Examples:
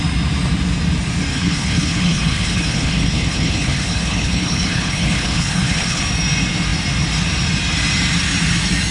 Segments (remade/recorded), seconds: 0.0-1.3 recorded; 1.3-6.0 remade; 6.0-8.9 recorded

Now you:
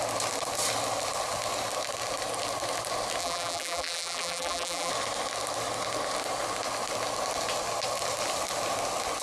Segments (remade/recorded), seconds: 0.0-3.2 recorded; 3.2-4.9 remade; 4.9-9.2 recorded

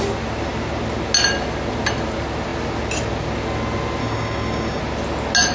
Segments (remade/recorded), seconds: 0.0-4.0 recorded; 4.0-4.8 remade; 4.8-5.5 recorded

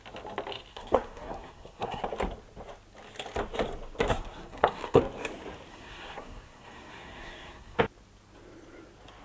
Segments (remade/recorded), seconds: 0.0-0.7 recorded; 0.7-2.0 remade; 2.0-4.1 recorded; 4.1-5.0 remade; 5.0-5.7 recorded; 5.7-7.8 remade; 7.8-9.2 recorded

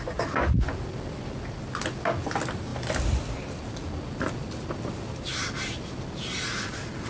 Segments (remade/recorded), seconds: 0.0-7.1 recorded